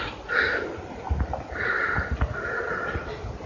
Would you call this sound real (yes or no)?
yes